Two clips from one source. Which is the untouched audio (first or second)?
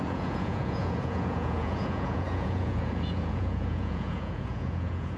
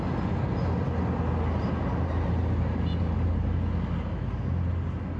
second